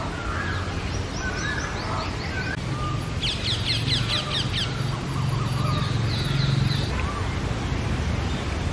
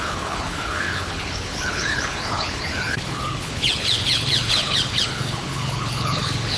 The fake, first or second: second